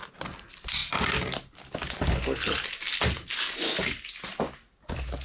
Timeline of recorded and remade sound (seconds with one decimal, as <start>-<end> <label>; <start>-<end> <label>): 0.0-5.2 recorded

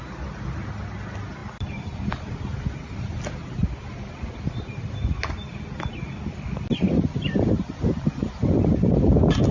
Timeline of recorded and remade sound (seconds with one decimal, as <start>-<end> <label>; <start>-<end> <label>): 0.0-1.4 recorded; 1.4-2.4 remade; 2.4-9.5 recorded

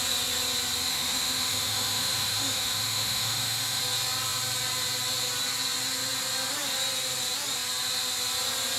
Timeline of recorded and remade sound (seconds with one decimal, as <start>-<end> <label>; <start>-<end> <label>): 0.0-0.9 recorded; 0.9-3.8 remade; 3.8-8.8 recorded

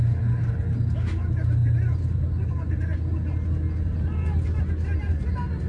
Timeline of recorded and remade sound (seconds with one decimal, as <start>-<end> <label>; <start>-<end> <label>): 0.0-5.7 recorded

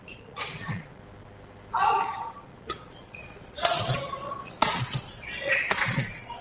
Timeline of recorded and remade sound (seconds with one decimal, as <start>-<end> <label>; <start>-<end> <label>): 0.0-1.0 remade; 1.0-1.8 recorded; 1.8-6.4 remade

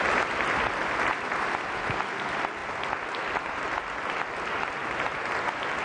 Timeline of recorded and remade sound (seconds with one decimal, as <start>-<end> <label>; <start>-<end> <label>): 0.0-5.8 recorded

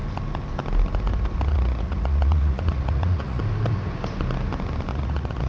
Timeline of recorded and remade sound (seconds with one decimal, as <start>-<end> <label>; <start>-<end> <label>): 0.0-1.5 recorded; 1.5-3.4 remade; 3.4-4.9 recorded; 4.9-5.5 remade